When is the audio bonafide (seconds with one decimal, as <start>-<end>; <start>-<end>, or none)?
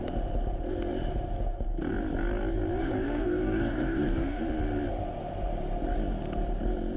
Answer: 0.0-2.8; 4.4-7.0